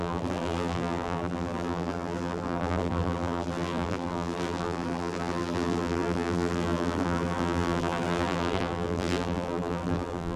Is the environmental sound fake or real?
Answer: fake